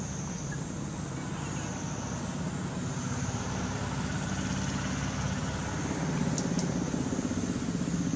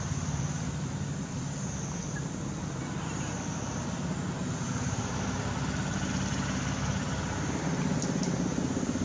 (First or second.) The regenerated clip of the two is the second